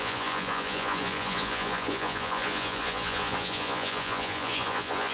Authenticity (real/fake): fake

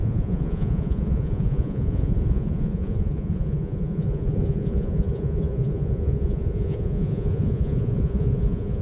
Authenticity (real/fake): fake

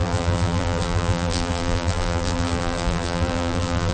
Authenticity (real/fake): fake